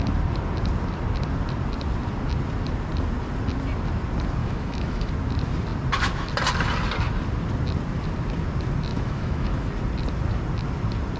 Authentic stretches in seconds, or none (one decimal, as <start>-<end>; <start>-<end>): 0.0-4.4; 5.1-8.9; 9.7-11.2